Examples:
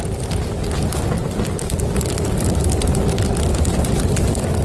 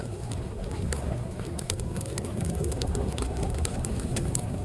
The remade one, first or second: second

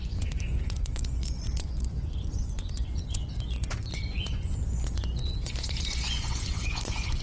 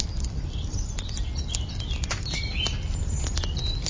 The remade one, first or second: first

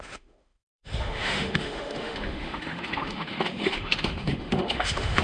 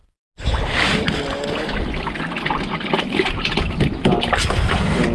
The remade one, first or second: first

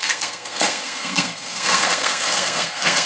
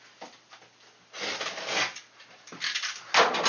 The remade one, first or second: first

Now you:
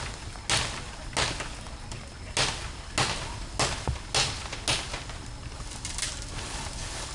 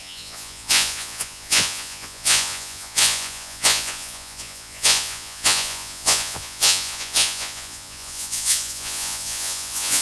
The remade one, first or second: second